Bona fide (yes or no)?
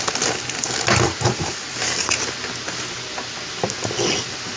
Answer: yes